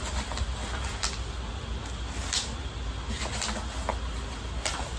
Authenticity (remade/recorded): recorded